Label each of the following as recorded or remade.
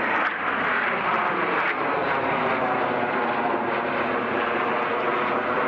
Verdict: recorded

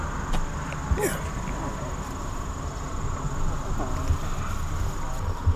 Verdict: recorded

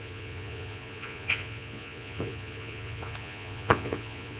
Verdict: remade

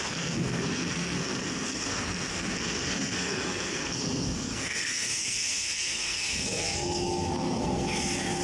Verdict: remade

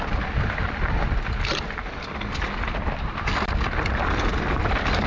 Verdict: recorded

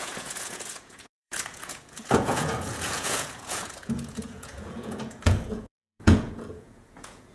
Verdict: remade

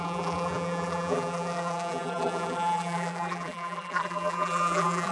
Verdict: remade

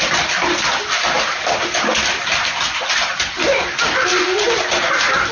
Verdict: recorded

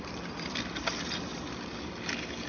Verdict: recorded